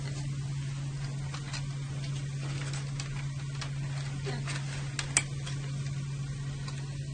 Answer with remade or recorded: recorded